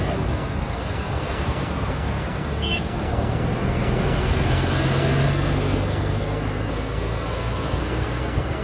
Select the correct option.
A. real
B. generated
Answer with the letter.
B